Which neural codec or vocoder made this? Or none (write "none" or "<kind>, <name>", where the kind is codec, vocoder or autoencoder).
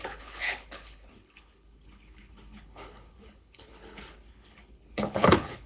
codec, HILCodec